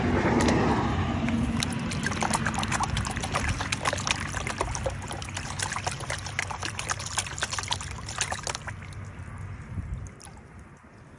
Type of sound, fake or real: real